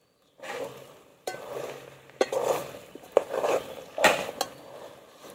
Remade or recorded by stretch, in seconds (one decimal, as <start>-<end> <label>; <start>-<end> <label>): 0.0-1.1 recorded; 1.1-4.3 remade; 4.3-5.3 recorded